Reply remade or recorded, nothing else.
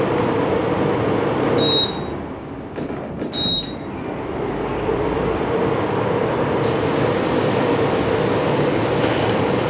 remade